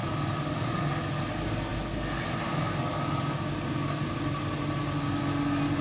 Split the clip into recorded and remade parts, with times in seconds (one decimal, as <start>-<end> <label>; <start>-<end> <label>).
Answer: 0.0-0.9 remade; 0.9-5.8 recorded